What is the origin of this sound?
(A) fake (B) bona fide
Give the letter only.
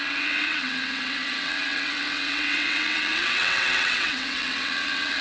A